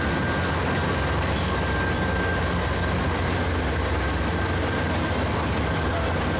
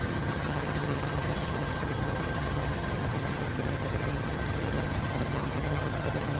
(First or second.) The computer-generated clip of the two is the second